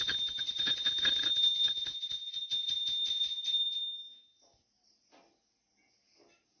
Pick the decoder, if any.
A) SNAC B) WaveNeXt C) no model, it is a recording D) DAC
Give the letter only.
C